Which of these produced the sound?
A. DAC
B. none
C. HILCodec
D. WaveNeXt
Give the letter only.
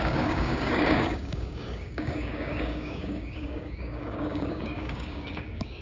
A